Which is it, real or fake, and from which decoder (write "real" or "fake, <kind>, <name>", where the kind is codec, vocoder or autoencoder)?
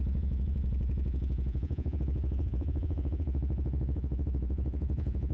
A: fake, vocoder, Vocos